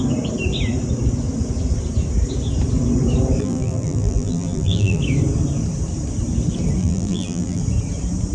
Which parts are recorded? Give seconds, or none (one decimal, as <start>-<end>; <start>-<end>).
0.0-3.4; 5.0-6.8; 7.6-8.3